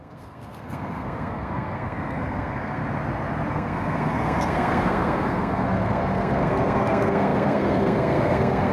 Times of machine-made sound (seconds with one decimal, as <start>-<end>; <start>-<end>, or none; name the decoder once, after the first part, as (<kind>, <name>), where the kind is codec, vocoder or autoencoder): 0.0-2.8 (codec, SNAC); 3.5-8.7